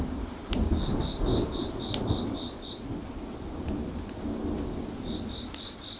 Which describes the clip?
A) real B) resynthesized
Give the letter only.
A